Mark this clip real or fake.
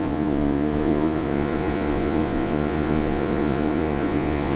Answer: fake